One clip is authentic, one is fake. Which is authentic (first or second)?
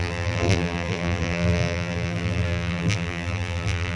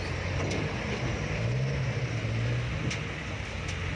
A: second